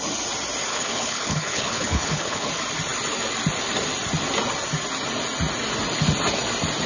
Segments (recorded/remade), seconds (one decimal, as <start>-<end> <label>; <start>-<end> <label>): 0.0-0.7 recorded; 0.7-2.5 remade; 2.5-6.9 recorded